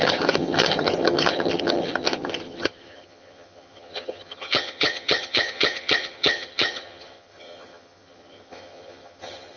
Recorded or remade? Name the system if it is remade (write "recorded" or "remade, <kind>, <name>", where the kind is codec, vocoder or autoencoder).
remade, vocoder, HiFi-GAN